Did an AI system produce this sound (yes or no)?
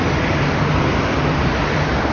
yes